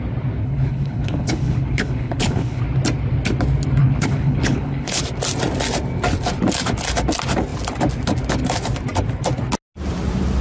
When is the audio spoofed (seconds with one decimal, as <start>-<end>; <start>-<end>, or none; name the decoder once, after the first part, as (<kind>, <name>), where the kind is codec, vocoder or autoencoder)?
0.4-2.6 (codec, HILCodec); 3.8-5.0